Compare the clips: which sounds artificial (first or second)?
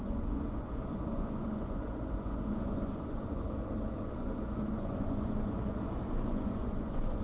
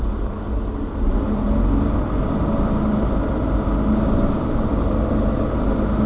first